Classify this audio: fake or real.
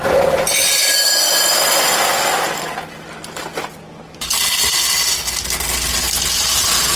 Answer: real